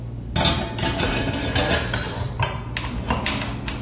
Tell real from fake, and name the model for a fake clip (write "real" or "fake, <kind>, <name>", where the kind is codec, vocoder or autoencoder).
real